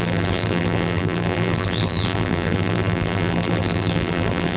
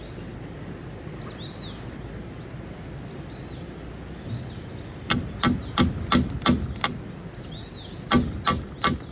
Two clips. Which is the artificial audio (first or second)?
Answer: first